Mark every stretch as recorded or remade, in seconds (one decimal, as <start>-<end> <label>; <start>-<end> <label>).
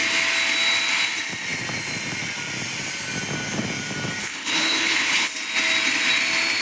0.0-4.2 recorded; 4.2-5.3 remade; 5.3-6.6 recorded